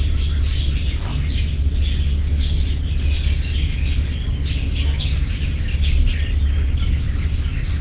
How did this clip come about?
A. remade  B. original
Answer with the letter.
B